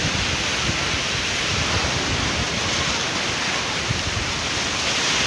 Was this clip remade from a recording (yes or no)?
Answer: no